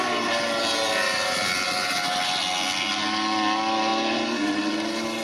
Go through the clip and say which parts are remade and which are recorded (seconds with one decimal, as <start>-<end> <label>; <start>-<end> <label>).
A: 0.0-5.2 recorded